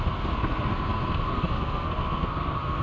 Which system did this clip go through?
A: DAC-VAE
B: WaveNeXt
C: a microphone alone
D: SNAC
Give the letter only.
D